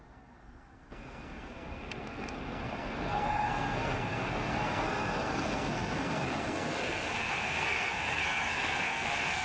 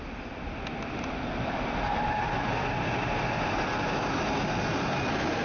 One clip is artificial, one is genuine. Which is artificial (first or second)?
first